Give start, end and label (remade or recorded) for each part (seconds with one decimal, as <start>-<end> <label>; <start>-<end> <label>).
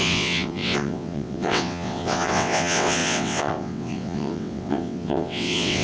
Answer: 0.0-5.8 remade